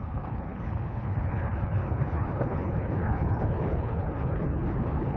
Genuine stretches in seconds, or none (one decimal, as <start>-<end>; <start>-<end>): none